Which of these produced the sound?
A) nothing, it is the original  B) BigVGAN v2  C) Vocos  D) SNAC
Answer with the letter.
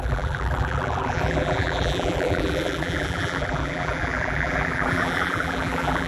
B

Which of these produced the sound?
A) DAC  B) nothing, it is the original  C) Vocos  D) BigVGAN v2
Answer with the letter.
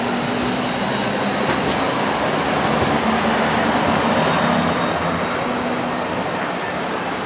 B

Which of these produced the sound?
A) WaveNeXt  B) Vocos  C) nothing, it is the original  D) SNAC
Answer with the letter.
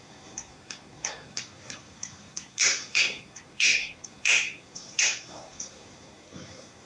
D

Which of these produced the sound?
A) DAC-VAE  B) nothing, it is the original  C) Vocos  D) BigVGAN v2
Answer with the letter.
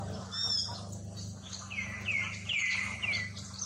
B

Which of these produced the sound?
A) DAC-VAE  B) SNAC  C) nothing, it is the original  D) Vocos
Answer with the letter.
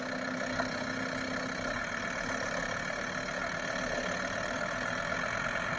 C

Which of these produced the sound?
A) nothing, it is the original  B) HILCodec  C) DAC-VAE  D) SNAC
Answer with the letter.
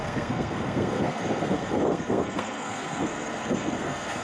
D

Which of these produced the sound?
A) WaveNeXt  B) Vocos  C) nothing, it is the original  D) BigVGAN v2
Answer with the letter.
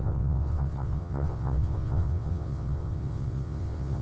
A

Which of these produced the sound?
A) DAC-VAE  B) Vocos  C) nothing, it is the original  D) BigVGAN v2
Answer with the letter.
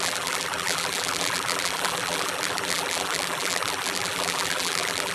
D